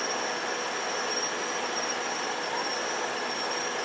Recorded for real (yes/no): yes